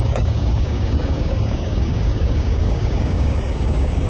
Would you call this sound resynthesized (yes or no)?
yes